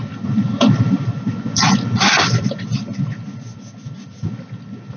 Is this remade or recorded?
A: remade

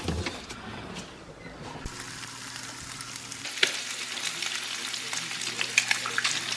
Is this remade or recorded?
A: recorded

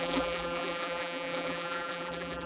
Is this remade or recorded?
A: remade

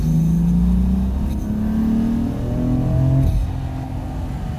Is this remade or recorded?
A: recorded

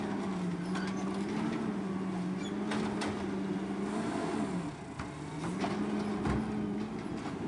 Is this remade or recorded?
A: recorded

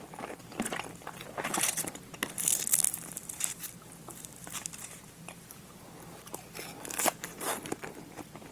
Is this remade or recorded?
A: remade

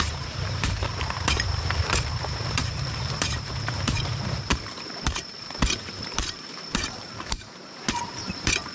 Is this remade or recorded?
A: remade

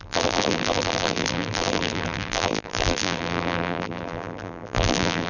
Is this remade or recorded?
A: remade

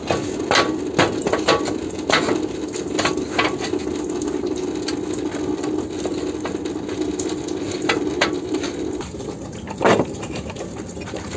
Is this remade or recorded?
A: recorded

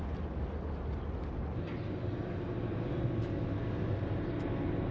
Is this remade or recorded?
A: recorded